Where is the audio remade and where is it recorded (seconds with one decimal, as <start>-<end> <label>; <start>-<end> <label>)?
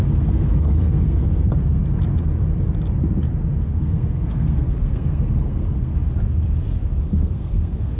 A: 0.0-1.8 remade; 1.8-3.6 recorded; 3.6-5.9 remade; 5.9-7.0 recorded; 7.0-8.0 remade